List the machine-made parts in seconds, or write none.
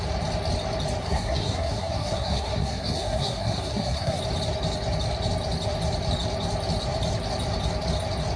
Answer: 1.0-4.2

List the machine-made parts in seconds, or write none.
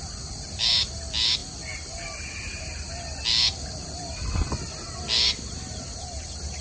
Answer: none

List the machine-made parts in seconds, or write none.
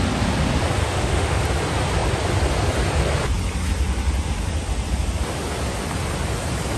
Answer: 0.8-1.4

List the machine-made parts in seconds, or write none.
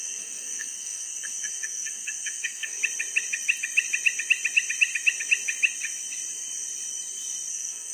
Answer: 0.0-2.8; 7.5-7.9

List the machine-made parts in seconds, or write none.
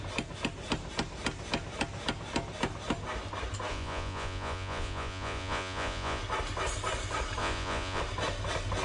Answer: 3.7-6.2; 7.4-8.0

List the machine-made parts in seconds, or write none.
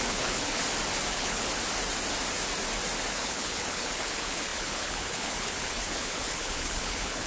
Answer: 0.0-0.6; 1.1-1.5; 3.1-7.3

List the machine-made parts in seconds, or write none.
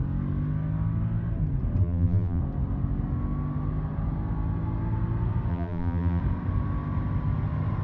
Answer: 1.8-2.4; 5.5-6.2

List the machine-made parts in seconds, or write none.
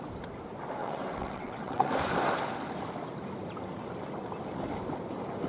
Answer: 0.8-1.9